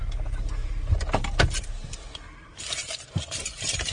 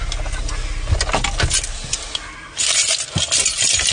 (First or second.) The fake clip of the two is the first